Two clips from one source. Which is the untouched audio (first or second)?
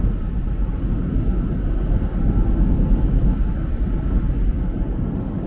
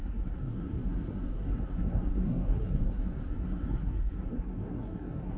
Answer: first